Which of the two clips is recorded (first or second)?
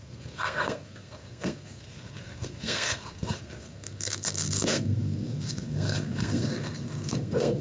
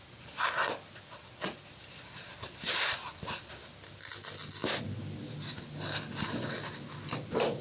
second